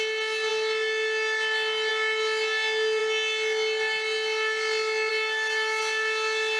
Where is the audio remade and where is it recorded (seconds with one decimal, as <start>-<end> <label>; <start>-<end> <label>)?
0.0-6.6 recorded